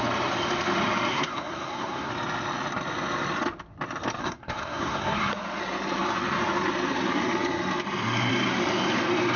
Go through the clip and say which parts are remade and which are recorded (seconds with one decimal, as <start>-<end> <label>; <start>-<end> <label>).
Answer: 0.0-1.1 recorded; 1.1-2.1 remade; 2.1-4.2 recorded; 4.2-5.3 remade; 5.3-9.4 recorded